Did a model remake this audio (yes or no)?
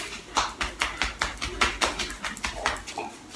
no